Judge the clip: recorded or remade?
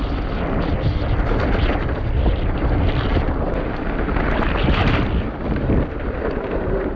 recorded